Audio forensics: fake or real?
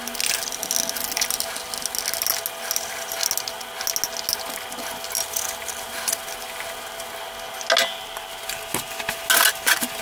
real